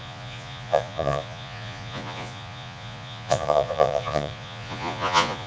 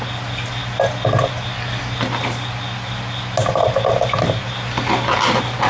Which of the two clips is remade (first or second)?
first